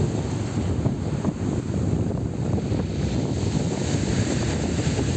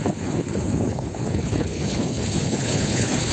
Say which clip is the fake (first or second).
second